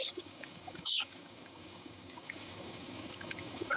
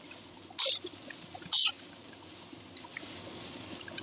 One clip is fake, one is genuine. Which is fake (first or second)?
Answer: first